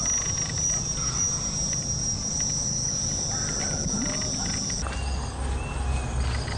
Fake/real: real